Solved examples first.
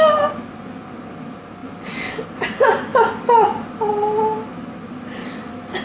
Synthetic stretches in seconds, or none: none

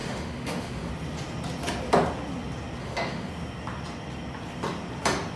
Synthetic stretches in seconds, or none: 0.0-0.9 (autoencoder, DAC-VAE); 2.8-3.3

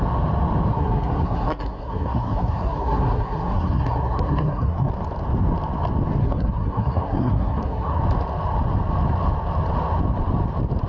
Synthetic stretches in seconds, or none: 0.7-4.9 (codec, SNAC); 6.2-8.0

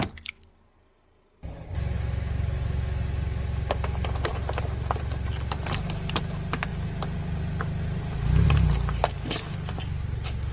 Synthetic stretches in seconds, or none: none

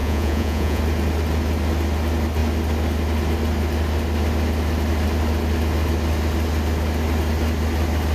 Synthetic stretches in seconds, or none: 0.0-0.8 (vocoder, Vocos)

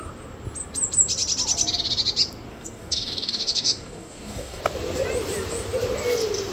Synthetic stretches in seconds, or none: 2.5-4.6 (codec, DAC)